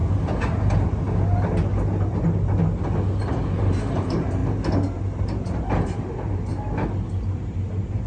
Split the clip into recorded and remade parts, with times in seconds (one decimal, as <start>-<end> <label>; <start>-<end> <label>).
0.0-3.6 recorded; 3.6-4.4 remade; 4.4-5.2 recorded; 5.2-6.5 remade; 6.5-7.2 recorded; 7.2-8.1 remade